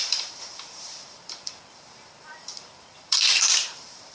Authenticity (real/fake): fake